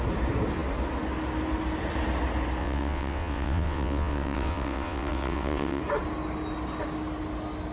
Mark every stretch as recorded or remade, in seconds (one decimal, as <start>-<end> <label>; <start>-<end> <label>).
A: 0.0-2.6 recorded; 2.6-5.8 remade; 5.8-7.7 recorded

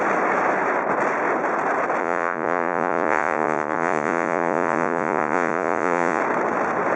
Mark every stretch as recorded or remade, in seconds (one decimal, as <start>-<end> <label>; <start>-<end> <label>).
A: 0.0-2.0 recorded; 2.0-6.2 remade; 6.2-7.0 recorded

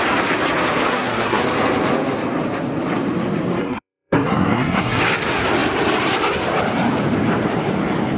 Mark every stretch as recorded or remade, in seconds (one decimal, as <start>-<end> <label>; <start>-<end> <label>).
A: 0.0-0.9 recorded; 0.9-1.4 remade; 1.4-3.6 recorded; 3.6-5.0 remade; 5.0-8.2 recorded

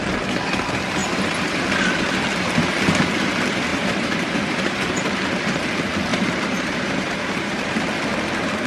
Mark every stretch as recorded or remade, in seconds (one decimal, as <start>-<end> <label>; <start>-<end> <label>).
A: 0.0-1.0 recorded; 1.0-1.6 remade; 1.6-3.7 recorded; 3.7-5.2 remade; 5.2-6.1 recorded; 6.1-7.8 remade; 7.8-8.7 recorded